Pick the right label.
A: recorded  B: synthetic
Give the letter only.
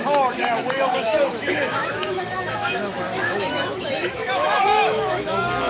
B